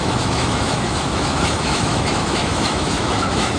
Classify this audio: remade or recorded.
remade